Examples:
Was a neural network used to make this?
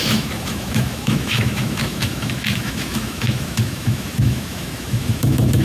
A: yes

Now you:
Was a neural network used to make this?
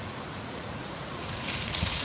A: yes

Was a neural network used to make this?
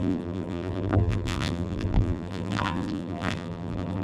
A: yes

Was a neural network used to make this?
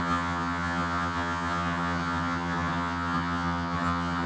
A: yes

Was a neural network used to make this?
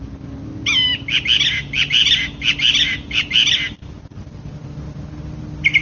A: no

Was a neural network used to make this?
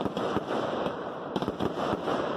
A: yes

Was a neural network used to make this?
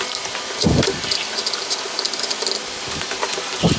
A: no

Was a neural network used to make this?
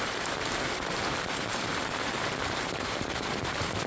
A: yes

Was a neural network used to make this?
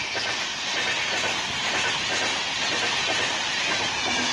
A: no